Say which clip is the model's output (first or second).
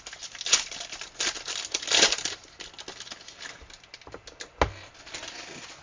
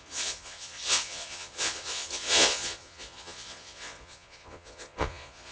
second